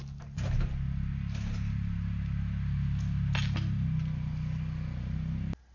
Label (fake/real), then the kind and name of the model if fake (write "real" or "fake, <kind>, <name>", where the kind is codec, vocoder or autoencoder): real